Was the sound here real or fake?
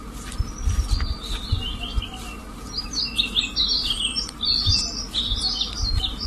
real